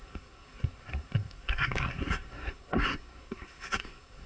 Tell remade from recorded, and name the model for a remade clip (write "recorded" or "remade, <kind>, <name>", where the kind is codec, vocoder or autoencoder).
remade, codec, SNAC